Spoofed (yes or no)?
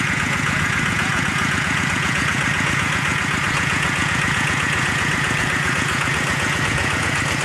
yes